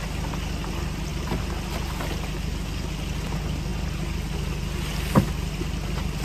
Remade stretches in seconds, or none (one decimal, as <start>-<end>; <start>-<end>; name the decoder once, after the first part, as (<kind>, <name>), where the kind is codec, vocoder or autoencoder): none